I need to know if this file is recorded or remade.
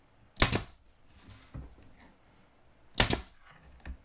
recorded